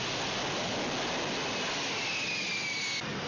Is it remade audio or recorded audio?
recorded